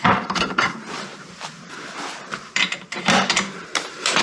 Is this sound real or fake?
fake